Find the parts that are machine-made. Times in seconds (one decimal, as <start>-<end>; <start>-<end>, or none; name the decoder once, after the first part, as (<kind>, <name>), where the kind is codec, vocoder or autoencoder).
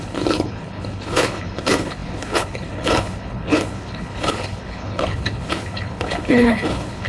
0.0-7.1 (codec, HILCodec)